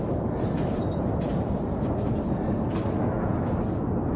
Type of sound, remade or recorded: recorded